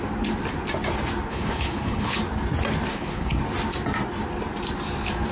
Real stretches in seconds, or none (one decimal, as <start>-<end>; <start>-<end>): 0.0-1.3; 2.2-2.9; 3.4-5.3